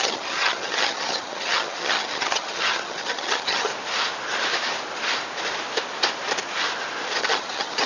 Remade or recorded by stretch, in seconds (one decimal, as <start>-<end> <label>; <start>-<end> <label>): 0.0-3.7 remade; 3.7-7.2 recorded; 7.2-7.9 remade

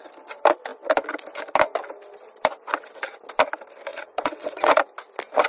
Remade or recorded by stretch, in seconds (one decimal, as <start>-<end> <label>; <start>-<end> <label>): 0.0-3.9 recorded; 3.9-4.7 remade; 4.7-5.5 recorded

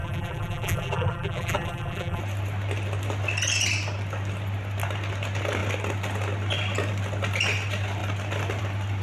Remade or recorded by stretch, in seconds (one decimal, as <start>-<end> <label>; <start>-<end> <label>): 0.0-2.2 remade; 2.2-9.0 recorded

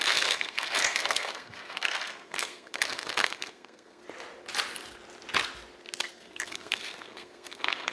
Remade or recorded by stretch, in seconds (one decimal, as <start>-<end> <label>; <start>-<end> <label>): 0.0-4.0 remade; 4.0-6.1 recorded; 6.1-7.9 remade

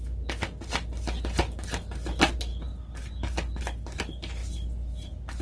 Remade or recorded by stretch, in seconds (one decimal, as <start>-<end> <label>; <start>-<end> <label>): 0.0-5.4 recorded

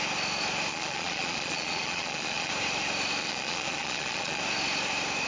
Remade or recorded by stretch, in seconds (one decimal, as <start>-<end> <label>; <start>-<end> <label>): 0.0-0.7 recorded; 0.7-2.5 remade; 2.5-3.2 recorded; 3.2-4.4 remade; 4.4-5.3 recorded

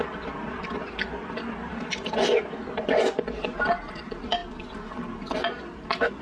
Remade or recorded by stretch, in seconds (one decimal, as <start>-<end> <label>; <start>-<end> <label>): 0.0-4.4 remade; 4.4-6.2 recorded